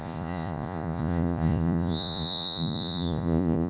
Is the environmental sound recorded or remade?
remade